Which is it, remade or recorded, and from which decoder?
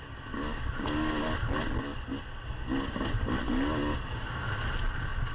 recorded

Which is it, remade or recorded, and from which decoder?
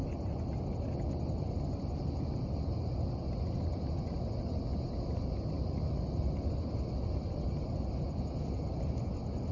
recorded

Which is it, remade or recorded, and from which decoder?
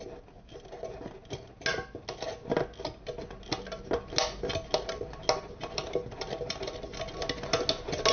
recorded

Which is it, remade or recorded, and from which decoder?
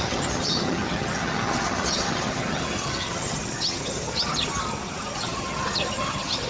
remade, vocoder, HiFi-GAN